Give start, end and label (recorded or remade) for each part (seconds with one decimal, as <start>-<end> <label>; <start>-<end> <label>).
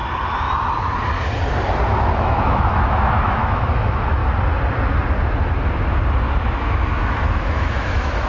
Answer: 0.0-1.9 recorded; 1.9-4.2 remade; 4.2-6.5 recorded; 6.5-8.3 remade